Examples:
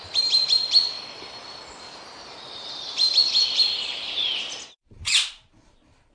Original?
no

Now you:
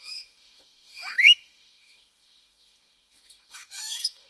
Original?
no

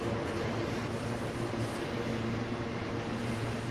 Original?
yes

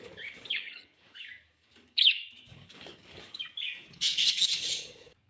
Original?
no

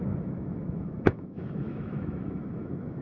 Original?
no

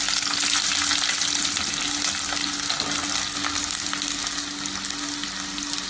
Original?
yes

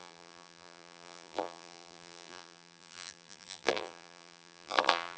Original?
no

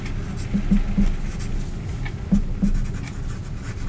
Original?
yes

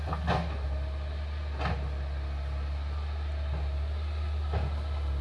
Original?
yes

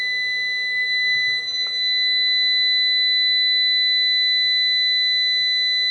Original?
yes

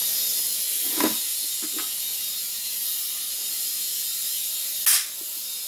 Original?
yes